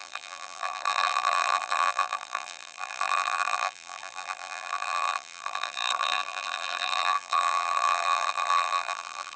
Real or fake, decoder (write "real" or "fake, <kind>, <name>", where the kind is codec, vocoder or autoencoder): fake, vocoder, BigVGAN v2